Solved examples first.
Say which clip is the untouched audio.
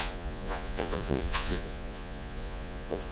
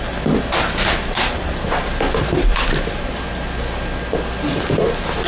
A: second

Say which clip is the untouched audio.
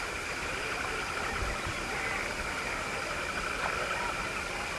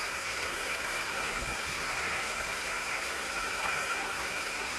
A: first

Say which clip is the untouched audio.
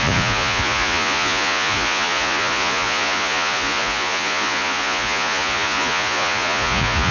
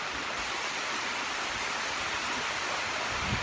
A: second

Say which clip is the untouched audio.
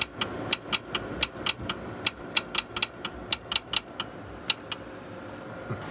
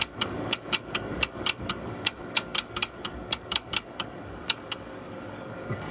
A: first